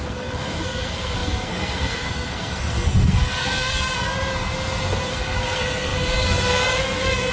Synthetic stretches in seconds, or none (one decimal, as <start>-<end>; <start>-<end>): 0.0-4.1; 5.1-7.3